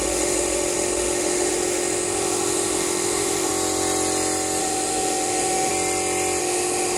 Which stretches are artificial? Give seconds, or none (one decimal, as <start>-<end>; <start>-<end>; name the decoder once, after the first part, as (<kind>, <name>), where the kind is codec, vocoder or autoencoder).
0.0-3.5 (autoencoder, DAC-VAE); 4.6-5.7; 6.4-7.0